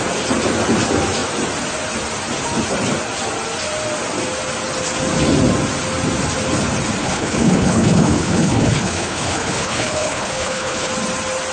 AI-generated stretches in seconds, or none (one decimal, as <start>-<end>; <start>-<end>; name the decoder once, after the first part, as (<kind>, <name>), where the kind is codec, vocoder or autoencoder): 7.0-10.9 (codec, HILCodec)